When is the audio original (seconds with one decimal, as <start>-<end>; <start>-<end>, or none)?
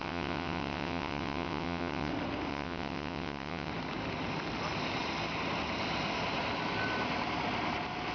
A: 2.1-2.5; 3.7-8.1